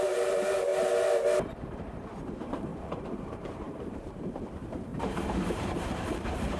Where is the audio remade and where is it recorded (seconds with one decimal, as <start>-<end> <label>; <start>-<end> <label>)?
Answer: 0.0-0.7 remade; 0.7-2.2 recorded; 2.2-6.6 remade